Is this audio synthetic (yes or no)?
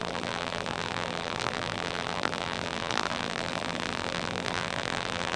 yes